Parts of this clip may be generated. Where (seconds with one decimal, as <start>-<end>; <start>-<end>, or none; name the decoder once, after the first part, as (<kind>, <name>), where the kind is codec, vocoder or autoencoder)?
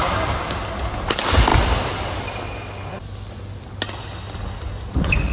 none